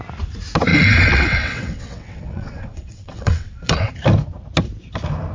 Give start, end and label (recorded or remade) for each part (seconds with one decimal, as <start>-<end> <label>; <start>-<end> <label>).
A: 0.0-0.7 recorded; 0.7-3.9 remade; 3.9-5.3 recorded